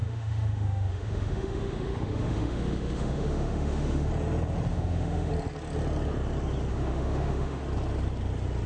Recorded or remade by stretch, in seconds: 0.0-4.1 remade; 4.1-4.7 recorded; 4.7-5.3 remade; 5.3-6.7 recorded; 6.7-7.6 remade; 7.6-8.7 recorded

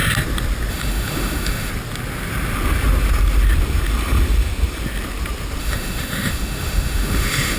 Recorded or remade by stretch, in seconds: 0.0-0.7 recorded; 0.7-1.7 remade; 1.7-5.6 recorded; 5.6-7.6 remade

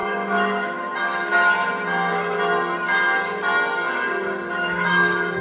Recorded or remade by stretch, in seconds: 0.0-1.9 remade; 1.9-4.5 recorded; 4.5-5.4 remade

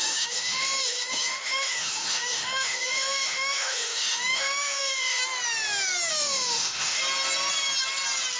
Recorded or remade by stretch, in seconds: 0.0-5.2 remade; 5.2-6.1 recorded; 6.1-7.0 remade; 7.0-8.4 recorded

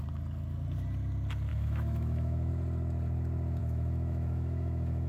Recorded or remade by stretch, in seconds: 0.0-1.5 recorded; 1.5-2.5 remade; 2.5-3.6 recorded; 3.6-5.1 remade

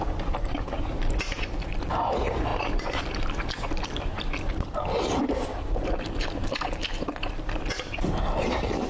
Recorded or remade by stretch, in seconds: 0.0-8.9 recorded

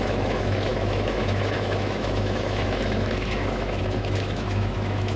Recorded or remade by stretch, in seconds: 0.0-5.2 remade

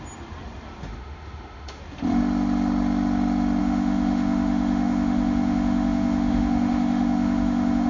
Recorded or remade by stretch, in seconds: 0.0-0.9 recorded; 0.9-1.8 remade; 1.8-3.6 recorded; 3.6-7.9 remade